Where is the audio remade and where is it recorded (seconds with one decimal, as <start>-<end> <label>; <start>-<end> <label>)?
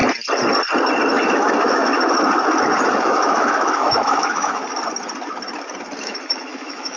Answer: 0.0-1.1 recorded; 1.1-1.9 remade; 1.9-3.0 recorded; 3.0-4.6 remade; 4.6-6.0 recorded; 6.0-7.0 remade